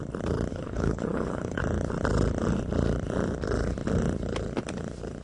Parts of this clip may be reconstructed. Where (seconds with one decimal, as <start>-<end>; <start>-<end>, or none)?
0.5-1.6